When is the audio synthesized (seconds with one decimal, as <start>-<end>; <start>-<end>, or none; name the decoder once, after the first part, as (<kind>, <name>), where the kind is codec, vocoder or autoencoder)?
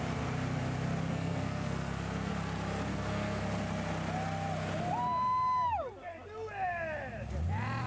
1.1-2.3 (codec, SNAC); 2.9-3.4